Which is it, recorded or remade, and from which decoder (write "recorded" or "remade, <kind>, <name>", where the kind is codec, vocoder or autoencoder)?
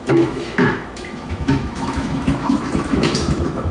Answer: remade, autoencoder, DAC-VAE